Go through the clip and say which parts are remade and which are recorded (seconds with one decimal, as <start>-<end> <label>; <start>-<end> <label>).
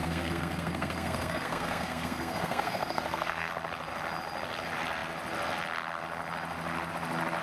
0.0-3.5 remade; 3.5-7.4 recorded